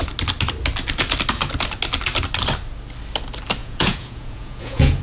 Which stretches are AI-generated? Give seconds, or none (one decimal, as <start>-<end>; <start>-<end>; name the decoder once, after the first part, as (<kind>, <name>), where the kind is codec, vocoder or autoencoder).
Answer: 3.6-5.0 (vocoder, Vocos)